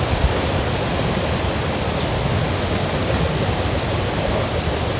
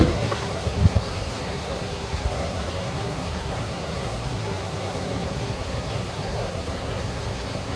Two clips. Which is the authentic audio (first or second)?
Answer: first